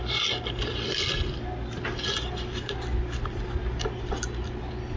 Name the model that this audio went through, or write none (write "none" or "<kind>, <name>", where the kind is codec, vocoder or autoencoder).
none